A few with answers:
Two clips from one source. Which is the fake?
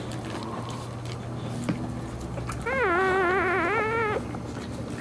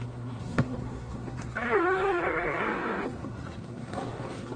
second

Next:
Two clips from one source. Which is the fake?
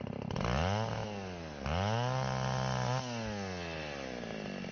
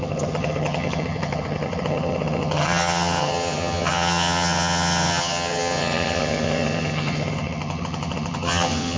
second